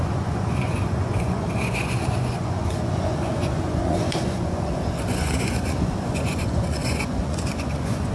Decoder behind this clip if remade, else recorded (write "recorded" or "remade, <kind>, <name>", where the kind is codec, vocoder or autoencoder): remade, vocoder, Vocos